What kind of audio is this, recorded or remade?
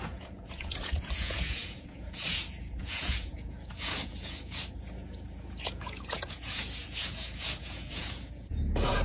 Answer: remade